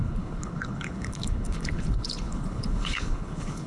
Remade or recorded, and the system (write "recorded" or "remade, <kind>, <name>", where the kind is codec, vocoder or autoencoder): remade, codec, HILCodec